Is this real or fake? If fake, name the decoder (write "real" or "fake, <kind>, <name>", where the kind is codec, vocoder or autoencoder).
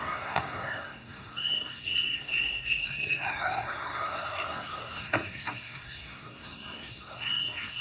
fake, codec, SNAC